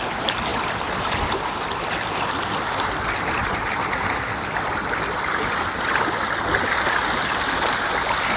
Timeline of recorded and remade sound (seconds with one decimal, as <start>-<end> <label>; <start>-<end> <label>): 0.0-0.5 recorded; 0.5-1.9 remade; 1.9-8.4 recorded